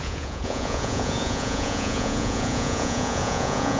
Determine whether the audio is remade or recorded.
remade